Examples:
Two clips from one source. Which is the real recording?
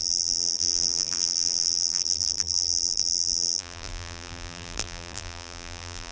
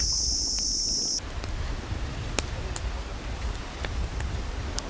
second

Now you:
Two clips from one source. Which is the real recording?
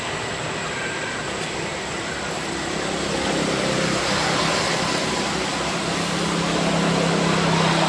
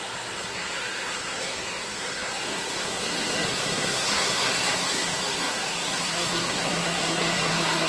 first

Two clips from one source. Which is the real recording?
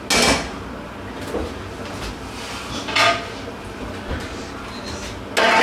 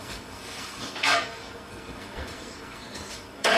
first